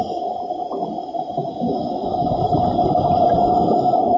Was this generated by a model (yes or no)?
no